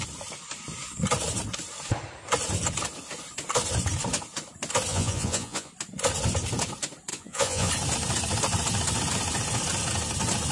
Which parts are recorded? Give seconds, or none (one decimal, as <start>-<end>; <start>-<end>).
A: 0.0-4.9; 5.7-7.1; 7.7-10.5